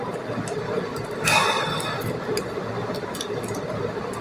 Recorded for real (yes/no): yes